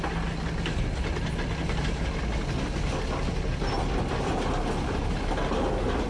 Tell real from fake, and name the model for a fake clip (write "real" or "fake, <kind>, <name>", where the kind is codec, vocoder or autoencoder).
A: real